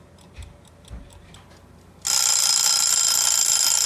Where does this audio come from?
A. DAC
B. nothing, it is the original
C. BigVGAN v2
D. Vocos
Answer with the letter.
B